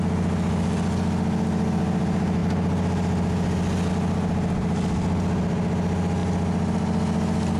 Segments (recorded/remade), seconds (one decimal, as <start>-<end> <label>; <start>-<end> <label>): 0.0-7.6 recorded